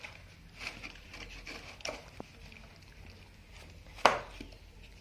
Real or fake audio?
real